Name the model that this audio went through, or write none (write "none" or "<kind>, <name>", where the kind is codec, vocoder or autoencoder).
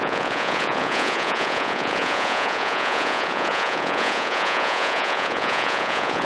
vocoder, Vocos